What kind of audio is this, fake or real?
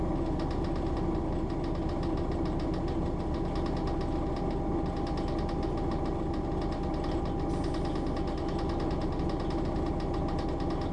real